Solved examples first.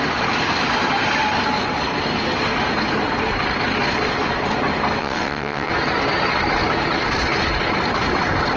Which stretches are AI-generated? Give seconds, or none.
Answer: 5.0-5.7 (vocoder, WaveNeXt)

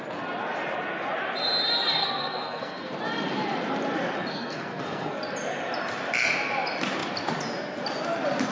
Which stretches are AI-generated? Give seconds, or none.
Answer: 2.0-2.9 (codec, SNAC); 4.3-5.2